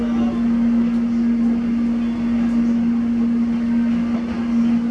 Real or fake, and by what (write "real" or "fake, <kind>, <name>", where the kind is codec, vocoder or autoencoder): real